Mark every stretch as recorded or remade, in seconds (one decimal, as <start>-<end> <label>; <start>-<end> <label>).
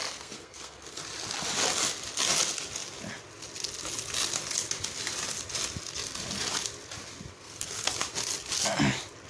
0.0-1.0 remade; 1.0-7.3 recorded; 7.3-7.9 remade; 7.9-9.3 recorded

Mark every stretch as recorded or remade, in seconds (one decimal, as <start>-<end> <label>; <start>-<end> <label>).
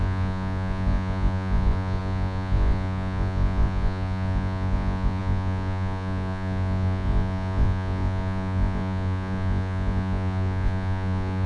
0.0-11.5 remade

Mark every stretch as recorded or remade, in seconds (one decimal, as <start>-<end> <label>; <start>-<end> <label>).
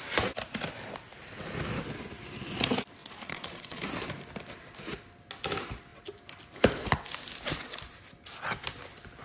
0.0-3.0 recorded; 3.0-3.8 remade; 3.8-9.2 recorded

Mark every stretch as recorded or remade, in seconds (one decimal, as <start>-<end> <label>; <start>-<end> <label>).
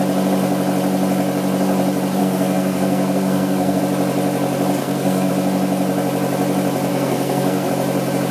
0.0-2.2 recorded; 2.2-3.8 remade; 3.8-4.8 recorded; 4.8-5.3 remade; 5.3-6.9 recorded; 6.9-7.7 remade; 7.7-8.3 recorded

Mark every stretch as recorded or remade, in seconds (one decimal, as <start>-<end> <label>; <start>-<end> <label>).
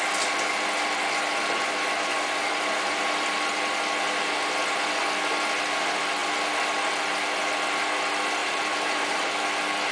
0.0-8.4 recorded; 8.4-9.3 remade; 9.3-9.9 recorded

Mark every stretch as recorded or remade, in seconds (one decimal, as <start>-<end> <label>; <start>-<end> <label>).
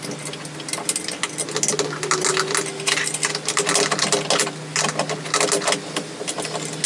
0.0-6.9 recorded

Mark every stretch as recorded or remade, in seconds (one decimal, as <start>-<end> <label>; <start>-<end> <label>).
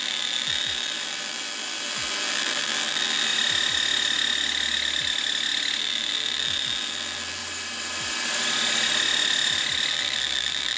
0.0-3.3 remade; 3.3-5.8 recorded; 5.8-7.4 remade; 7.4-9.9 recorded; 9.9-10.8 remade